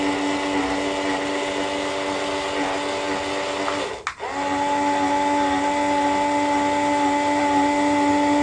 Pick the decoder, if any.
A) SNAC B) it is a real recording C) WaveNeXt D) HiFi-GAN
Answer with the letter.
B